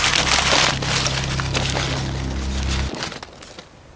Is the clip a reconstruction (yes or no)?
no